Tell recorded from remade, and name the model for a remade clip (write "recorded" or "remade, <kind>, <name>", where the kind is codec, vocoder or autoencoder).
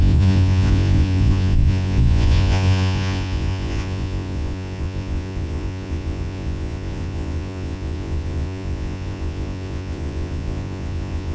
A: remade, vocoder, Vocos